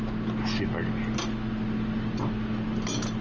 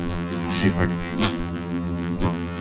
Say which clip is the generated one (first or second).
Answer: second